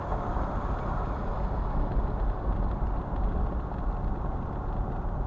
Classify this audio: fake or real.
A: real